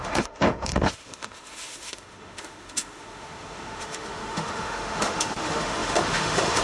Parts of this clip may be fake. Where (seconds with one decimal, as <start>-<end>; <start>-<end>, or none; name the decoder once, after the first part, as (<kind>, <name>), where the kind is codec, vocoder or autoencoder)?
0.0-6.6 (autoencoder, DAC-VAE)